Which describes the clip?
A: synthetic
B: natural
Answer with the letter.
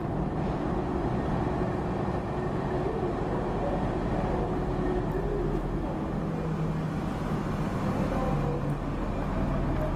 B